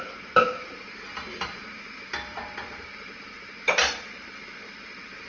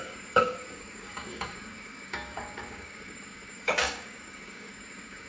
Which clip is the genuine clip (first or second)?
first